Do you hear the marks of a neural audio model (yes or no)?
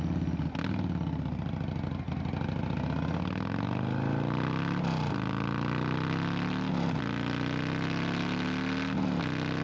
no